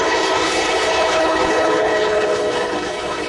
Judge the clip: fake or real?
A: fake